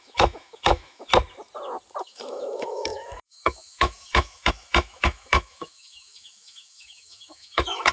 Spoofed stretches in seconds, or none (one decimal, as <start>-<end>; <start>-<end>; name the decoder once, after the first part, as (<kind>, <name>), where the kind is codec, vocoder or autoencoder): 0.0-1.1 (autoencoder, DAC-VAE); 2.0-7.9

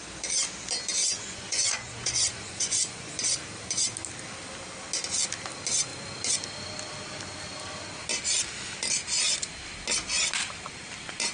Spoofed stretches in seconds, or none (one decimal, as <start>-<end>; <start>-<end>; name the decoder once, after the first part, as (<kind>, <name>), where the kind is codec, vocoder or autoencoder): 1.0-3.1 (vocoder, Vocos)